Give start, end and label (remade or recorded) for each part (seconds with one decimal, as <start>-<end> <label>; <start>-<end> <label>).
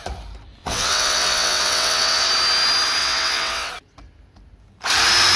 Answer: 0.0-0.6 recorded; 0.6-2.3 remade; 2.3-3.0 recorded; 3.0-3.7 remade; 3.7-5.4 recorded